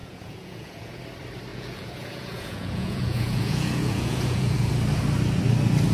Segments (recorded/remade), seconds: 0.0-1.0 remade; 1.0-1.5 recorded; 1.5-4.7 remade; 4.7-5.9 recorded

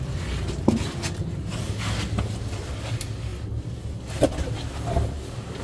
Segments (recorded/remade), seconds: 0.0-5.6 recorded

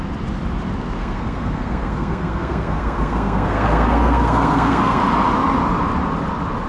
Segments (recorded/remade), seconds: 0.0-1.0 recorded; 1.0-5.0 remade; 5.0-6.7 recorded

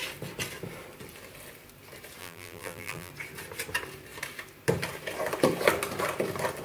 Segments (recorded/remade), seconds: 0.0-2.2 recorded; 2.2-3.1 remade; 3.1-6.6 recorded

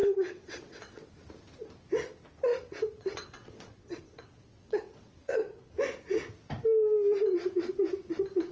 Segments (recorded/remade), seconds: 0.0-1.1 remade; 1.1-2.5 recorded; 2.5-5.8 remade; 5.8-8.5 recorded